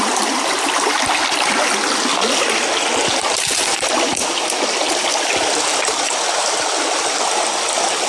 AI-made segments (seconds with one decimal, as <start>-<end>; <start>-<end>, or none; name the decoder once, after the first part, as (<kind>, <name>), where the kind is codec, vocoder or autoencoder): none